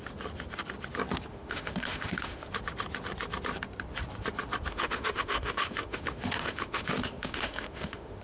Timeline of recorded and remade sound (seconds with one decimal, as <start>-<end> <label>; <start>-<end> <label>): 0.0-1.3 recorded; 1.3-2.5 remade; 2.5-4.7 recorded; 4.7-8.2 remade